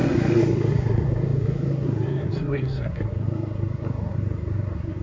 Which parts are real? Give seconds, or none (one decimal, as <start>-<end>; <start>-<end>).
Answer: none